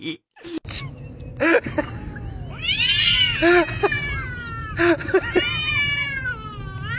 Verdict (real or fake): real